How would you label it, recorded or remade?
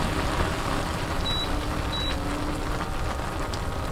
recorded